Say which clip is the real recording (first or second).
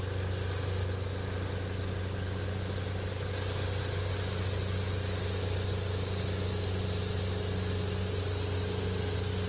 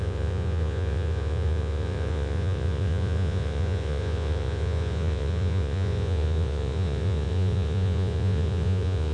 first